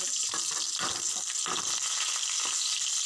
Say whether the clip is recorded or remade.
recorded